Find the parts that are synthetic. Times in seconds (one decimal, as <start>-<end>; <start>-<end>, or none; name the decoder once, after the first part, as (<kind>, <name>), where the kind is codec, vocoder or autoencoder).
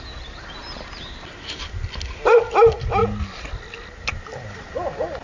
none